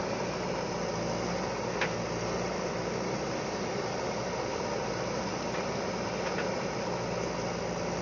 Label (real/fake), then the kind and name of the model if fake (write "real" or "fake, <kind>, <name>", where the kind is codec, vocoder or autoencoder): real